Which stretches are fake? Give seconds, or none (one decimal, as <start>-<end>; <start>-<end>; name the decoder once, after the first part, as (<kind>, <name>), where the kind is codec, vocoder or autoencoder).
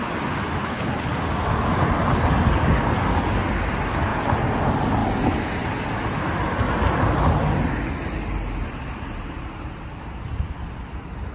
0.6-1.1 (codec, HILCodec)